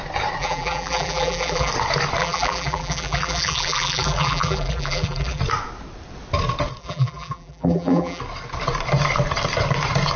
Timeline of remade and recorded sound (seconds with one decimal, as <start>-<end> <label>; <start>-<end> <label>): 0.0-0.4 recorded; 0.4-1.7 remade; 1.7-2.2 recorded; 2.2-5.4 remade; 5.4-6.8 recorded; 6.8-8.2 remade; 8.2-10.2 recorded